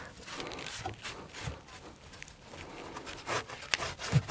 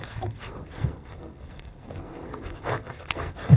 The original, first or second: first